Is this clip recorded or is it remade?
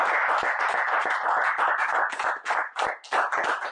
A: recorded